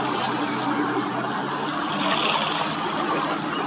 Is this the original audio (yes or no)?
yes